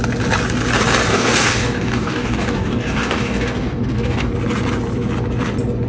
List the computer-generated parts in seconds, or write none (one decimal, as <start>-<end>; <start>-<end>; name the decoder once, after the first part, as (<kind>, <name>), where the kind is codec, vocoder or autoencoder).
1.1-4.3 (codec, DAC)